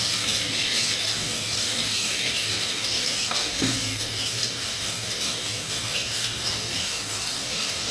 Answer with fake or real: fake